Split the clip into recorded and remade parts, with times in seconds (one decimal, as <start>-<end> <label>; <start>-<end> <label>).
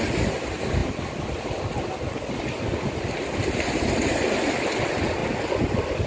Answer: 0.0-6.1 recorded